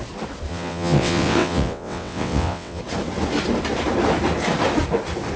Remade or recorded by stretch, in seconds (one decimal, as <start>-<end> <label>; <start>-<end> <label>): 0.0-0.5 recorded; 0.5-2.8 remade; 2.8-5.4 recorded